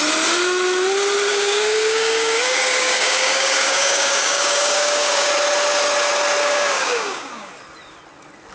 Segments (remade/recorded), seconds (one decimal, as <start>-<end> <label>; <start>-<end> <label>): 0.0-1.3 recorded; 1.3-5.3 remade; 5.3-6.4 recorded; 6.4-7.5 remade; 7.5-8.5 recorded